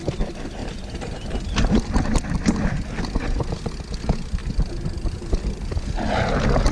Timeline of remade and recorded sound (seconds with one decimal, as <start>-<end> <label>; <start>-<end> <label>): 0.0-6.7 recorded